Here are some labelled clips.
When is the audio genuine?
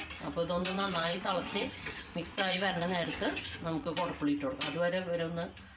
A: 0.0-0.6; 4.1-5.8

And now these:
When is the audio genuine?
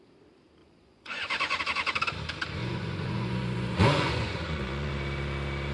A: 0.0-0.6; 1.6-2.6; 4.9-5.7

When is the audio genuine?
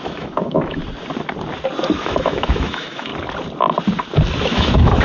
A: 0.8-2.0; 3.1-4.4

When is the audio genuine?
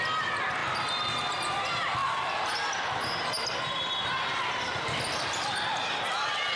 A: 0.0-6.6